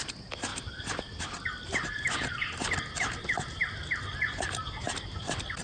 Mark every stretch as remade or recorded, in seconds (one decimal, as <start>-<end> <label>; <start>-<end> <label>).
0.0-5.6 recorded